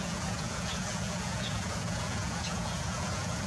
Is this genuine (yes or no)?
no